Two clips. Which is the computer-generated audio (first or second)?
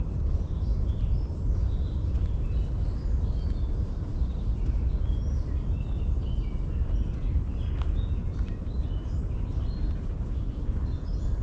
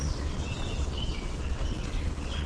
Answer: second